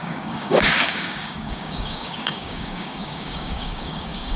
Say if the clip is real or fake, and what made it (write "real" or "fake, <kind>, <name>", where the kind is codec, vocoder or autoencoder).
fake, codec, DAC